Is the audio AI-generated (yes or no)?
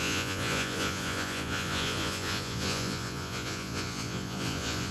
yes